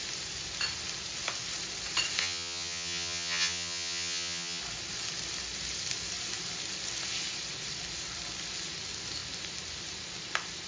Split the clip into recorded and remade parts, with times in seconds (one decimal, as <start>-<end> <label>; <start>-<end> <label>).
0.0-2.2 recorded; 2.2-4.6 remade; 4.6-10.7 recorded